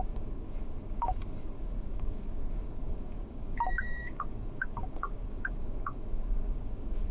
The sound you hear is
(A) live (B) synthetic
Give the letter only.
B